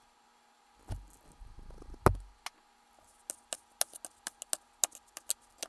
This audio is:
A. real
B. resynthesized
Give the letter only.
A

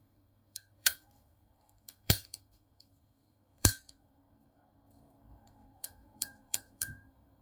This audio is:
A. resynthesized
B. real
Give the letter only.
A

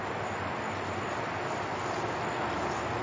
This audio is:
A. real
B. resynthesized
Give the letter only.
A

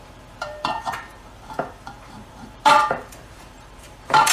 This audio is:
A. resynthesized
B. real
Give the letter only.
A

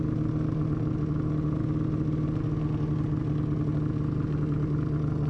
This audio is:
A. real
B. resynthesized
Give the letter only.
A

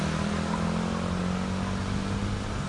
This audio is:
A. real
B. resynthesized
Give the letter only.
A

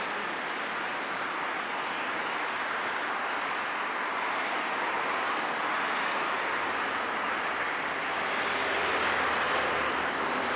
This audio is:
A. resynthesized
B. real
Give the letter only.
B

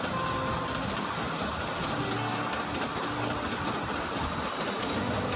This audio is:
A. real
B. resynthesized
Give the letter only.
A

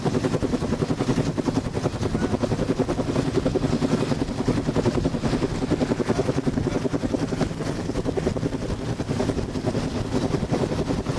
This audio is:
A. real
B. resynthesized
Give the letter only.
A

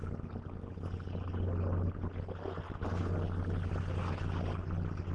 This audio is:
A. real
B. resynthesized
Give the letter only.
A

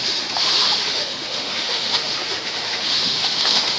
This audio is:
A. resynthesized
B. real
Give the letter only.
A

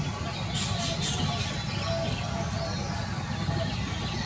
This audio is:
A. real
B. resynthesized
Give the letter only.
A